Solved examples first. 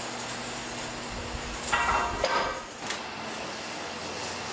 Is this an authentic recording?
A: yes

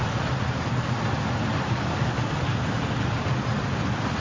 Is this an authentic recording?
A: yes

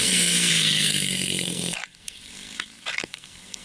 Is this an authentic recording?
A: no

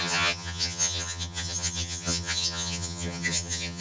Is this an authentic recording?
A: no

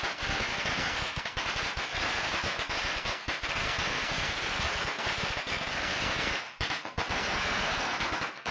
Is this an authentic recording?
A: no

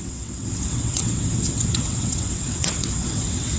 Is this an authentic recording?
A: no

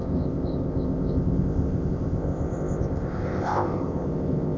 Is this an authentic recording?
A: no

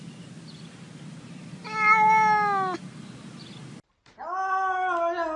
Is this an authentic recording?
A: yes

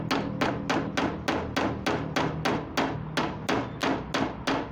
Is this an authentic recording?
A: yes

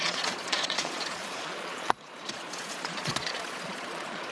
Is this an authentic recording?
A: no